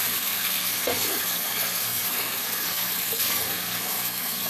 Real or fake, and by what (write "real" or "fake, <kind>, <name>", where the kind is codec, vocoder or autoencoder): fake, codec, SNAC